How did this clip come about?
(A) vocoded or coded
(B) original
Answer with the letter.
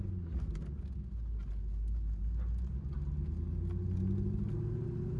B